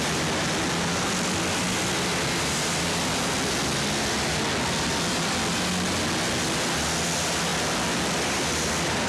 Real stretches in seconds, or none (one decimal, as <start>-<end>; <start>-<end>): 0.0-9.1